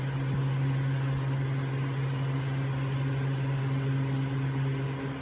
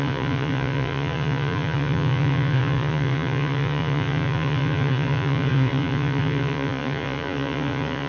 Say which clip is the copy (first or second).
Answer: second